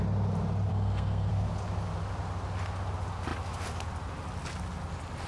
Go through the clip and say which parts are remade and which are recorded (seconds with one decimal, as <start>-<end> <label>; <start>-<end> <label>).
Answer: 0.0-0.7 recorded; 0.7-1.3 remade; 1.3-5.3 recorded